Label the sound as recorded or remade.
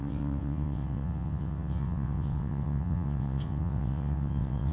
remade